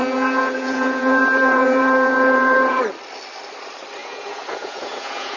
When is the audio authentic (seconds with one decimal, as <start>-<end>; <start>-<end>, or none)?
2.8-4.0